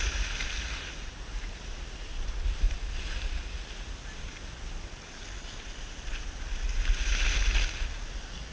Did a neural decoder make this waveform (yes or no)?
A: no